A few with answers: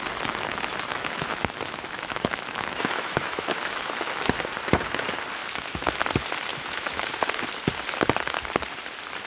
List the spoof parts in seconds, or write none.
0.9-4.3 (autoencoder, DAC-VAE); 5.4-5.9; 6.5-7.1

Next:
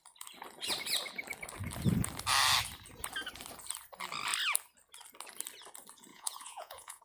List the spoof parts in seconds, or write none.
6.1-7.0 (vocoder, Vocos)

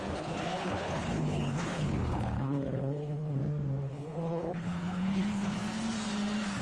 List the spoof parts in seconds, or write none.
0.0-3.4 (codec, HILCodec); 3.9-5.6